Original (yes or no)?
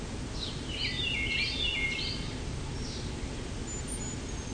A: yes